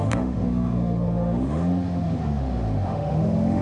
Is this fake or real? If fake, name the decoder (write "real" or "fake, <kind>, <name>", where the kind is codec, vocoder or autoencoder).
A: fake, autoencoder, DAC-VAE